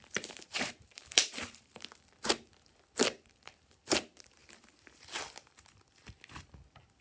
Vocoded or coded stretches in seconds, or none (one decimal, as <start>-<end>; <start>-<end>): 0.0-1.7; 3.0-4.4